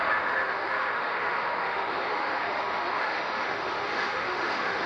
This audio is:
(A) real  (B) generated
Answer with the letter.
B